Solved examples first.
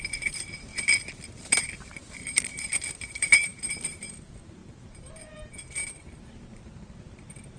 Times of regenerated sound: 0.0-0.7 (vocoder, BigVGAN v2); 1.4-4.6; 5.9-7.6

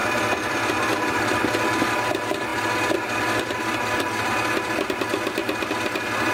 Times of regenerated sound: 0.0-2.1 (vocoder, BigVGAN v2)

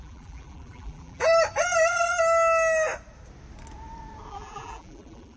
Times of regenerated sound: 0.0-1.3 (vocoder, BigVGAN v2); 4.3-5.4

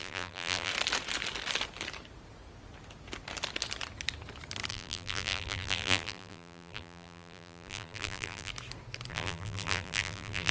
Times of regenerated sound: 0.0-0.7 (vocoder, BigVGAN v2); 4.7-8.5; 9.1-10.5